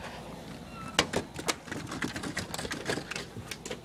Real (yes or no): yes